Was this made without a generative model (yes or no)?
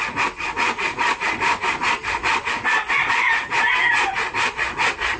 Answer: yes